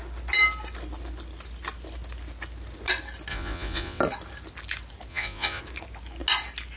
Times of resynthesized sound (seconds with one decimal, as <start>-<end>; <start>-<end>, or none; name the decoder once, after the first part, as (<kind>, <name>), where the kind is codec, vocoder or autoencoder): 3.3-4.0 (vocoder, Vocos); 5.1-5.6